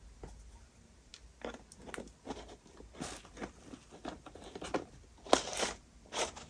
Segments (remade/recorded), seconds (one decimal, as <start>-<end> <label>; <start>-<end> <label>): 0.0-6.5 recorded